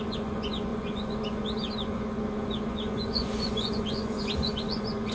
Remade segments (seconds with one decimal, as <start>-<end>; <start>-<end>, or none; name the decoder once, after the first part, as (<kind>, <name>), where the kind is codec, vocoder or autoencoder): 0.0-5.1 (vocoder, Vocos)